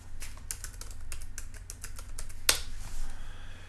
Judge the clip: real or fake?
real